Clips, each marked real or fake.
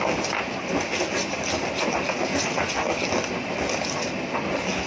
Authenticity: real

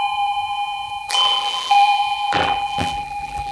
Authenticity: fake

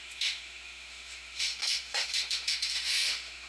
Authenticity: fake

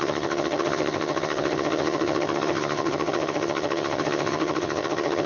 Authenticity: fake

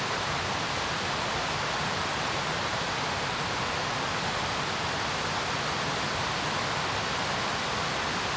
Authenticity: real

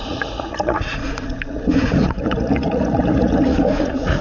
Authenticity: fake